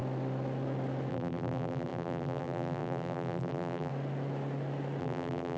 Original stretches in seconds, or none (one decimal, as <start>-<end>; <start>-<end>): 0.0-1.1; 3.9-5.0